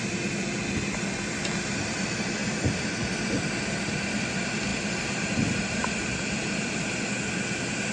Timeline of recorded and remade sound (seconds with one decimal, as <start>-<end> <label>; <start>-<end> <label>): 0.0-2.4 recorded; 2.4-4.0 remade; 4.0-4.7 recorded; 4.7-6.8 remade; 6.8-7.9 recorded